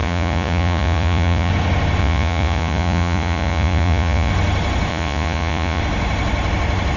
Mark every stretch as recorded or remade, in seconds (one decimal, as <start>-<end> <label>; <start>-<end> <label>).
0.0-1.5 remade; 1.5-2.0 recorded; 2.0-4.3 remade; 4.3-4.9 recorded; 4.9-5.8 remade; 5.8-7.0 recorded